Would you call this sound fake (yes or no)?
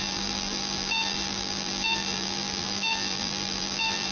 yes